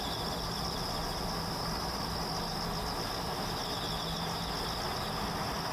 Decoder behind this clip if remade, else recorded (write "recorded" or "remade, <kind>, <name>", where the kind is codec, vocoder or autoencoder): recorded